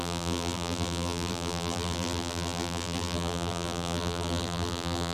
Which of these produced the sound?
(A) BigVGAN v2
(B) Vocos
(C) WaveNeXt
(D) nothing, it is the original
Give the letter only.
A